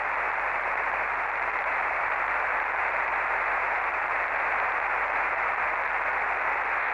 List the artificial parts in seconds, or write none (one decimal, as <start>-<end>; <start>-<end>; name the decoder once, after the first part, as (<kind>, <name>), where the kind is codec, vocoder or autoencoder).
1.6-5.7 (vocoder, BigVGAN v2)